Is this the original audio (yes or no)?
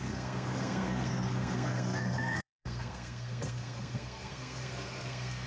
no